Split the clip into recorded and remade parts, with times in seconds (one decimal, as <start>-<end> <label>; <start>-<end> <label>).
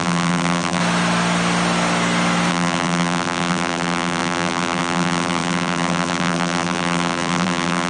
0.0-0.8 remade; 0.8-2.5 recorded; 2.5-7.9 remade